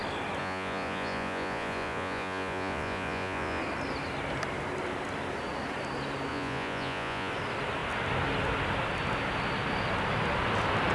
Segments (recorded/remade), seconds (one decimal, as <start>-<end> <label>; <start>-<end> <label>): 0.0-0.4 recorded; 0.4-3.6 remade; 3.6-6.3 recorded; 6.3-7.3 remade; 7.3-10.9 recorded